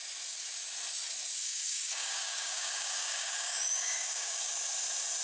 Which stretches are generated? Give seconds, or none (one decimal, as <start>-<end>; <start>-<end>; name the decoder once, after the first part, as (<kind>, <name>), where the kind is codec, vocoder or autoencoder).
1.4-4.5 (codec, DAC)